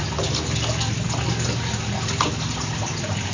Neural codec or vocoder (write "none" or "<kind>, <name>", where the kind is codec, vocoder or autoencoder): none